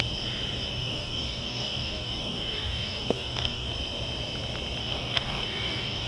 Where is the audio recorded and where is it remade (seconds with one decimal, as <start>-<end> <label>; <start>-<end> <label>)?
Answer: 0.0-0.7 recorded; 0.7-3.7 remade; 3.7-4.8 recorded; 4.8-6.1 remade

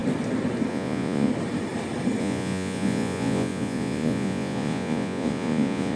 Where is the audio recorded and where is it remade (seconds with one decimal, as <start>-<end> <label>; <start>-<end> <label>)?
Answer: 0.0-0.7 recorded; 0.7-1.3 remade; 1.3-2.2 recorded; 2.2-6.0 remade

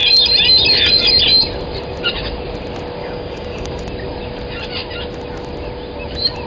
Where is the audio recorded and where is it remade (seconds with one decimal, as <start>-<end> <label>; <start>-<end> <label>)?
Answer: 0.0-3.0 recorded; 3.0-3.8 remade; 3.8-6.5 recorded

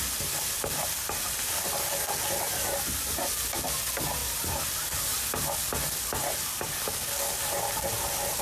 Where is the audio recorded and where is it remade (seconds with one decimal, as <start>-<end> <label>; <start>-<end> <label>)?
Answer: 0.0-8.4 recorded